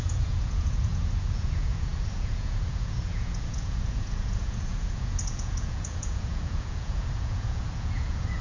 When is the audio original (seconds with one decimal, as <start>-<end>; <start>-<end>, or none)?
none